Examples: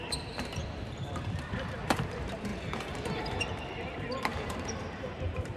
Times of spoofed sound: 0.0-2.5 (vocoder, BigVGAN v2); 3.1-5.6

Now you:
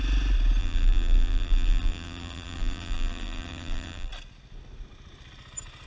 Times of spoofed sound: 0.6-4.1 (vocoder, BigVGAN v2)

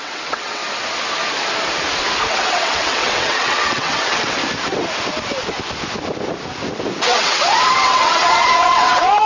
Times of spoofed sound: 0.0-0.6 (vocoder, WaveNeXt); 2.3-4.4; 7.0-9.3